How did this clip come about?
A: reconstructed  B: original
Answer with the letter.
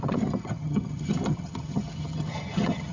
A